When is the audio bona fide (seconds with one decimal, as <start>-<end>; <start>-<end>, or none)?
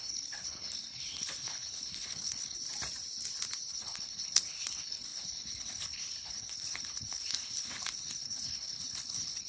2.6-3.7